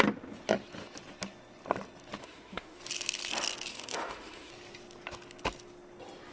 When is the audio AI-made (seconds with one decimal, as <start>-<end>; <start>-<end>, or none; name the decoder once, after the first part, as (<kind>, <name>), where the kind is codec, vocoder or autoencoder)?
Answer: 2.2-2.8 (autoencoder, DAC-VAE); 3.7-4.5